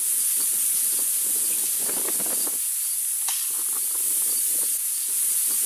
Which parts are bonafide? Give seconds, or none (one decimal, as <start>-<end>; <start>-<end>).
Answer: 0.0-5.7